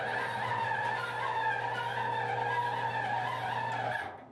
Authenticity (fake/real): real